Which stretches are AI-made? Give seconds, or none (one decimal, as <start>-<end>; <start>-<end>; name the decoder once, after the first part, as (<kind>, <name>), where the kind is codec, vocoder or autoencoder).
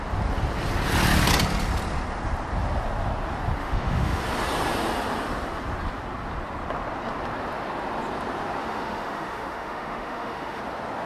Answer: 3.6-4.2 (autoencoder, DAC-VAE); 8.6-10.6